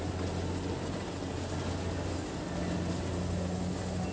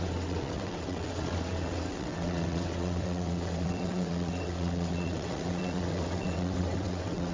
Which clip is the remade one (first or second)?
second